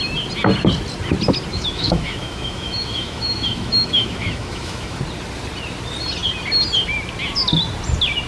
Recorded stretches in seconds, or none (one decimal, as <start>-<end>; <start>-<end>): 0.0-1.5; 5.0-8.3